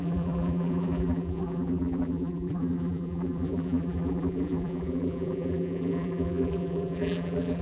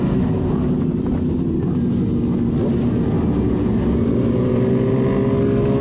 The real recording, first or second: second